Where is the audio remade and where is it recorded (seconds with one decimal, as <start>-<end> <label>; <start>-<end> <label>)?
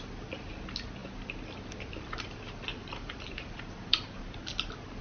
0.0-2.7 recorded; 2.7-4.2 remade; 4.2-5.0 recorded